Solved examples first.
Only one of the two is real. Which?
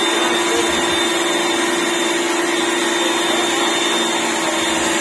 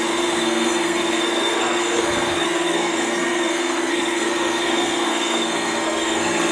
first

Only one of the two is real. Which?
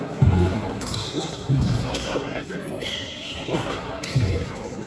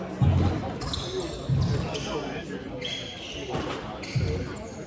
second